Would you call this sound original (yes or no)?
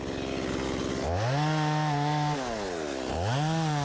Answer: yes